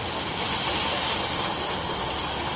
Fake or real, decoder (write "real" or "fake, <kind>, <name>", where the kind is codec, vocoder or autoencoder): real